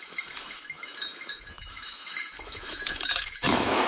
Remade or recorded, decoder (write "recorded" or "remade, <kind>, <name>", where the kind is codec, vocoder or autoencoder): remade, autoencoder, DAC-VAE